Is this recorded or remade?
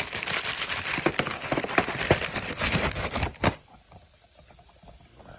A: remade